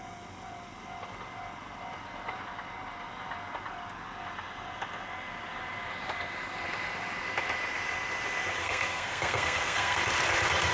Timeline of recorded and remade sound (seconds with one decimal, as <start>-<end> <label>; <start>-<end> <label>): 0.0-8.6 recorded; 8.6-10.0 remade; 10.0-10.7 recorded

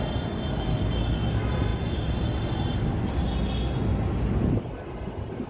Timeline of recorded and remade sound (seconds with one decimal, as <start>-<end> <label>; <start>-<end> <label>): 0.0-5.5 recorded

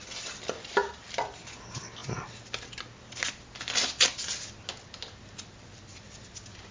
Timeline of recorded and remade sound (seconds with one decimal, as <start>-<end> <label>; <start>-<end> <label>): 0.0-6.7 recorded

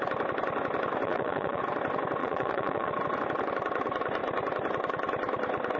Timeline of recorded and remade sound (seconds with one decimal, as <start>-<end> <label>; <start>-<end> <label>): 0.0-1.0 recorded; 1.0-1.6 remade; 1.6-2.2 recorded; 2.2-2.9 remade; 2.9-5.8 recorded

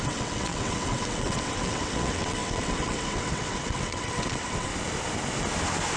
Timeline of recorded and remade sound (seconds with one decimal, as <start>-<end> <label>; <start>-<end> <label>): 0.0-4.7 remade; 4.7-6.0 recorded

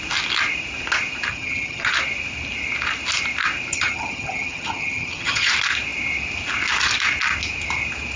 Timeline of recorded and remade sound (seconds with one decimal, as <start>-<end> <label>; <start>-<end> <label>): 0.0-1.3 recorded; 1.3-1.9 remade; 1.9-3.7 recorded; 3.7-5.5 remade; 5.5-8.2 recorded

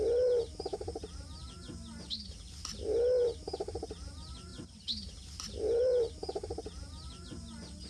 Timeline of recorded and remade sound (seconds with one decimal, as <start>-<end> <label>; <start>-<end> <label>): 0.0-0.7 remade; 0.7-3.2 recorded; 3.2-7.9 remade